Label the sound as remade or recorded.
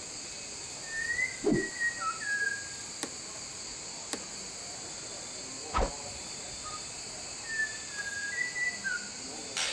recorded